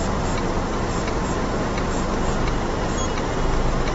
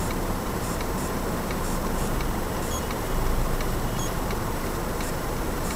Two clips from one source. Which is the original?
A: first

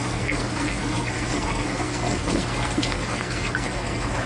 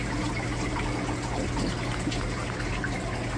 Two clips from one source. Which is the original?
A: second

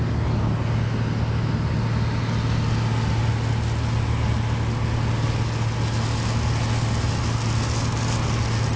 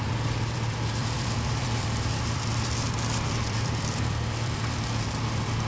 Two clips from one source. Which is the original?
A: first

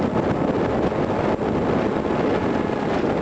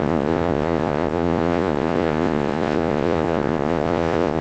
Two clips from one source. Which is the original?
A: first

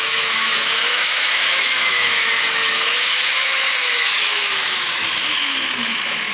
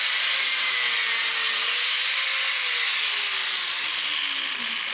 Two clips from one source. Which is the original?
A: second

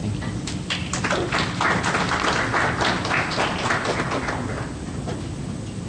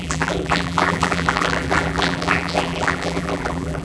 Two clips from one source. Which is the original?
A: first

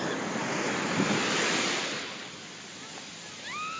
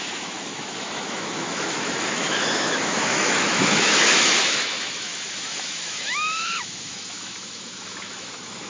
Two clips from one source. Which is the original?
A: first